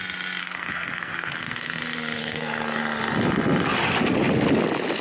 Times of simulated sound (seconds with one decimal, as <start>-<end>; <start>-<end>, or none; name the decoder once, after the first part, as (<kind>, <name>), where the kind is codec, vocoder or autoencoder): 0.4-1.8 (codec, SNAC); 2.2-2.8